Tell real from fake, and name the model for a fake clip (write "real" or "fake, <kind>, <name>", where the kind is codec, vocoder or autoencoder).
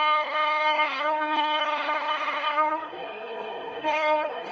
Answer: fake, codec, SNAC